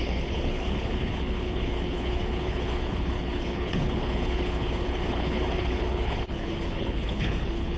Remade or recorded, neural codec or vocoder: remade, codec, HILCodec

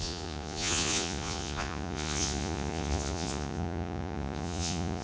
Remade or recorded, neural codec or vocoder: remade, vocoder, Vocos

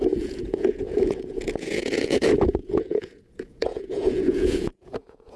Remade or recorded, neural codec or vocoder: remade, vocoder, Vocos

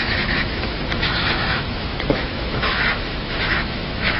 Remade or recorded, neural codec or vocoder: remade, autoencoder, DAC-VAE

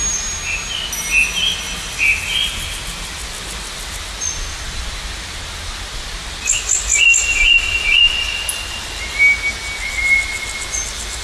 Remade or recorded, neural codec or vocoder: recorded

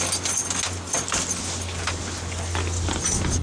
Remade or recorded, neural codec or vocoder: recorded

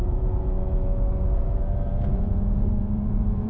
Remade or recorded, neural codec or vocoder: remade, vocoder, Vocos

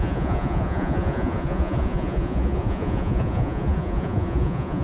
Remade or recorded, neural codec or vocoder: remade, vocoder, Vocos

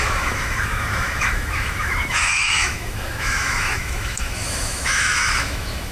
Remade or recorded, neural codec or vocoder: remade, autoencoder, DAC-VAE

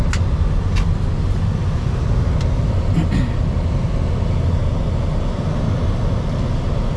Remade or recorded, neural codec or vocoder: recorded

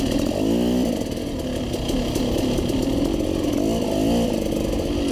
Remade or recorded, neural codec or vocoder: recorded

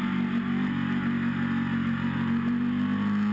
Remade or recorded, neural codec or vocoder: recorded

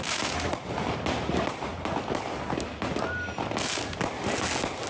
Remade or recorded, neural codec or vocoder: recorded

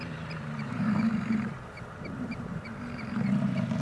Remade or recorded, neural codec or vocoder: remade, vocoder, BigVGAN v2